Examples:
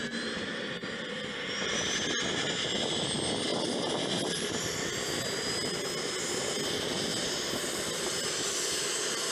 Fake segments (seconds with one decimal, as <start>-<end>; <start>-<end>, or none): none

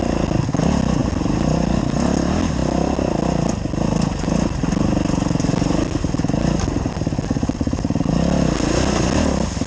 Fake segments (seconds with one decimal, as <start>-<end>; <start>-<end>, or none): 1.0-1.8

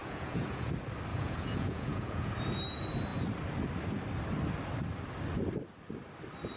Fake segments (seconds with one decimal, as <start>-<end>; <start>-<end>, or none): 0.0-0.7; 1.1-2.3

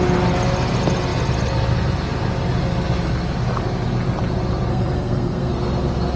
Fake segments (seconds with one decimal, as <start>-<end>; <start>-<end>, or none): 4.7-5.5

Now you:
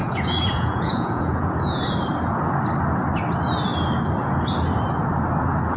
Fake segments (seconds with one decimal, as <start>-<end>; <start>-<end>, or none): 0.0-1.8

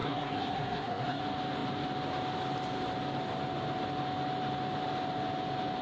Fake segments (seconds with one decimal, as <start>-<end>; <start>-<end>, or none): 0.0-1.2

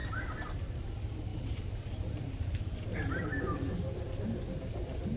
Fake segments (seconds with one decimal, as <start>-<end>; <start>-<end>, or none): 0.0-0.9; 1.3-4.0

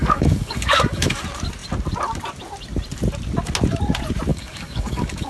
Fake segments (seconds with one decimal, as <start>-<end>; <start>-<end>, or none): 0.0-1.2; 4.3-5.3